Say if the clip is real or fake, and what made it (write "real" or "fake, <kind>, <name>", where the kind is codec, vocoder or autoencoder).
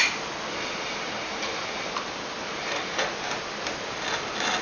real